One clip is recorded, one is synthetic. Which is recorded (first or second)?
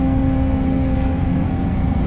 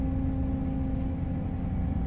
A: second